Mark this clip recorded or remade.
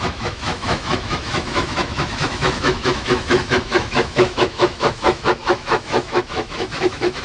remade